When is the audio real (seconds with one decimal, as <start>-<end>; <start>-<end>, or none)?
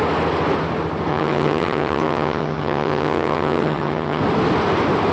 0.0-1.1; 4.2-5.1